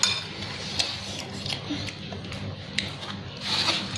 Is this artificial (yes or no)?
no